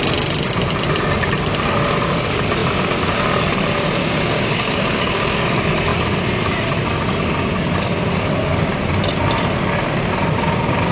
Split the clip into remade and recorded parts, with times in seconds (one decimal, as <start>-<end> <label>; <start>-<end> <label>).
0.0-4.0 recorded; 4.0-5.3 remade; 5.3-10.9 recorded